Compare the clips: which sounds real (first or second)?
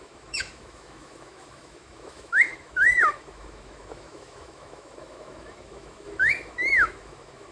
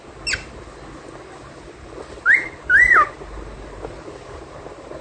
second